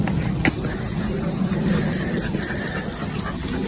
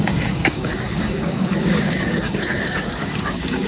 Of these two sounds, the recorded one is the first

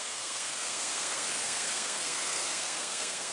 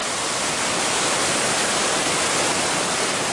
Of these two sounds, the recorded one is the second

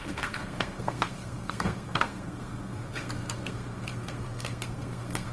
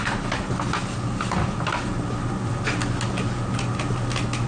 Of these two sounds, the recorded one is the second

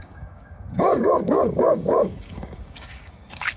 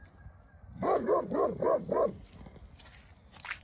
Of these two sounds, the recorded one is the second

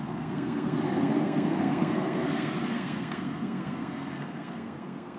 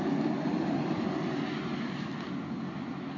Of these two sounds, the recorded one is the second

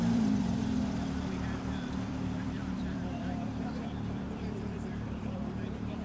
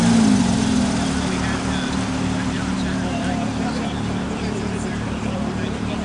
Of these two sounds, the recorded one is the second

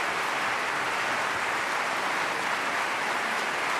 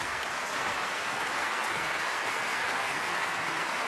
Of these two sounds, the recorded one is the first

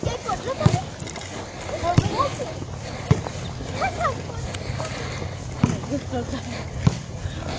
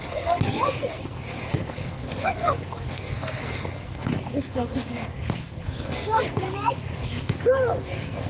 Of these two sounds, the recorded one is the first